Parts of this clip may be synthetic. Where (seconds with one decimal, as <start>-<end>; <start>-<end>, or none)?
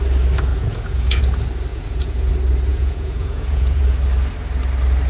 0.5-1.2; 1.7-2.3; 2.7-3.8